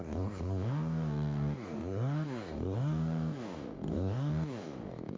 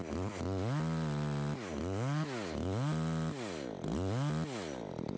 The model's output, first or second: first